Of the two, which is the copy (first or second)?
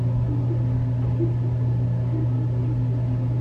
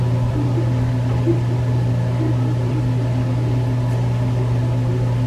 second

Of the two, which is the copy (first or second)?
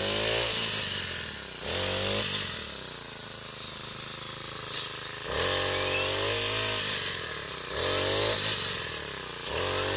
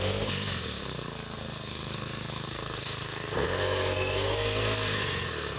second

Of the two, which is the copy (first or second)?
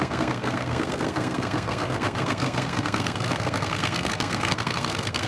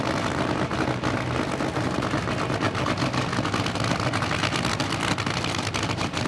first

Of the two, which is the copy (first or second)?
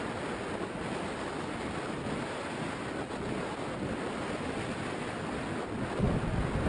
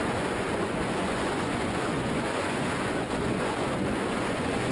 second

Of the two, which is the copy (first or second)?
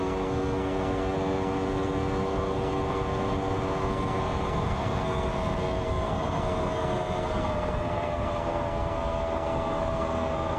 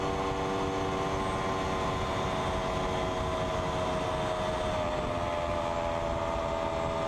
first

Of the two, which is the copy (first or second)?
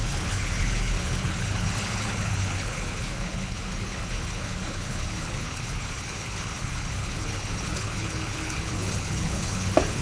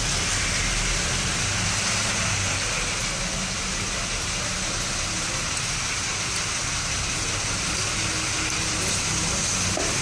first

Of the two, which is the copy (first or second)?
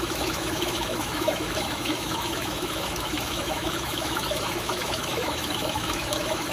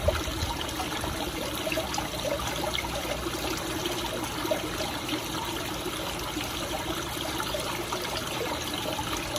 first